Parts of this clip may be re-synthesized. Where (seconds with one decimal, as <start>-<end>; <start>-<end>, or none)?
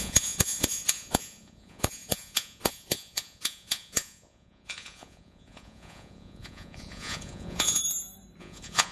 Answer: 0.0-7.8; 8.4-8.9